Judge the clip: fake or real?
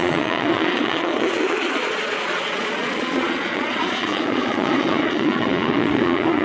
fake